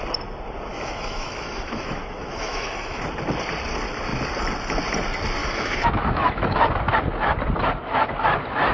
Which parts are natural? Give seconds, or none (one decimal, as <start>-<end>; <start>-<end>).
0.0-0.7; 3.0-5.4; 6.7-8.7